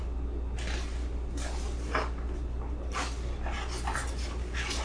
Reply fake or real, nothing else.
real